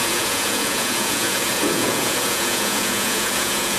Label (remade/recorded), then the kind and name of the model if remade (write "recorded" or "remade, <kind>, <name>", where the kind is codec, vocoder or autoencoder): remade, vocoder, Vocos